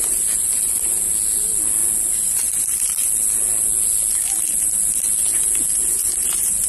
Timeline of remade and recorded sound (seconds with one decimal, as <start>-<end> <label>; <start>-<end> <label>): 0.0-6.7 recorded